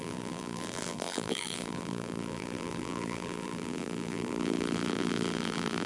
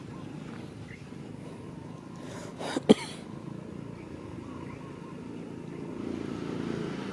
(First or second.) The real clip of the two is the second